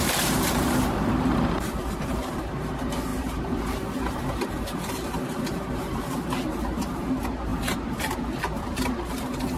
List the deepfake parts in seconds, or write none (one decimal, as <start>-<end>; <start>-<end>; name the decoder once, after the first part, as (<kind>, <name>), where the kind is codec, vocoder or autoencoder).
0.0-9.6 (vocoder, BigVGAN v2)